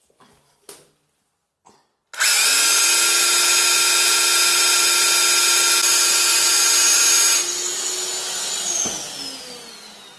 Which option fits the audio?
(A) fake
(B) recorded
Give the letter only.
B